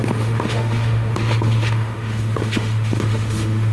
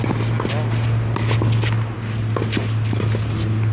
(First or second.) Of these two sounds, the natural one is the second